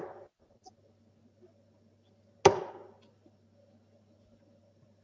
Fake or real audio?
real